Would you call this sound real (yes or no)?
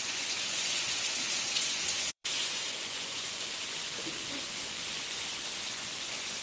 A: no